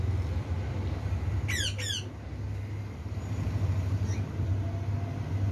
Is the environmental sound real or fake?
real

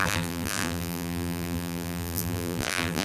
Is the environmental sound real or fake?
fake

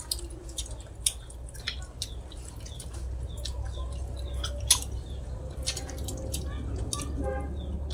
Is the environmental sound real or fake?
real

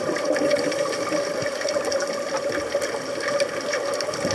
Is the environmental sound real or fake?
real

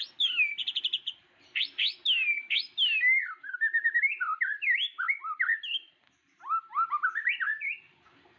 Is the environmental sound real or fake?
real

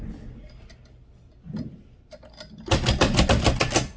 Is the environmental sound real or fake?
real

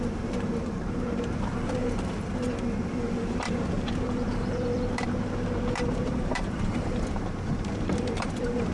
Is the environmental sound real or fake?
fake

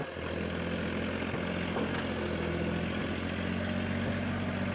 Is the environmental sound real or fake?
real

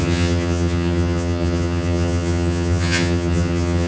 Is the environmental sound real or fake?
fake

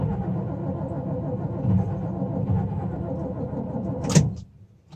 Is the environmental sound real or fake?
real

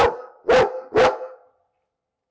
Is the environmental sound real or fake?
real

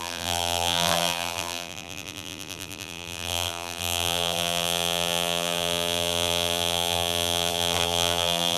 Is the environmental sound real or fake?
fake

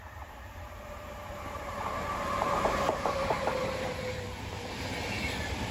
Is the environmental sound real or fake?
fake